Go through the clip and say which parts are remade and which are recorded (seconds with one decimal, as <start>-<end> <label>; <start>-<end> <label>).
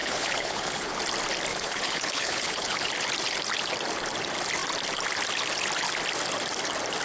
0.0-1.0 remade; 1.0-1.5 recorded; 1.5-2.9 remade; 2.9-7.0 recorded